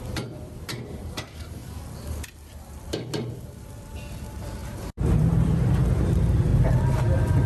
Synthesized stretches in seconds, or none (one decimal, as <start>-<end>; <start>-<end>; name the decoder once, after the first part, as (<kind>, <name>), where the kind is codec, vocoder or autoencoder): 0.0-1.6 (vocoder, BigVGAN v2); 3.3-6.5